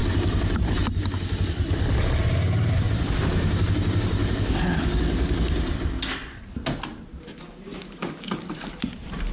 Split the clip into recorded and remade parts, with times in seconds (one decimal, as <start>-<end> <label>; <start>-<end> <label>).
0.0-4.2 recorded; 4.2-5.3 remade; 5.3-8.0 recorded; 8.0-8.7 remade; 8.7-9.3 recorded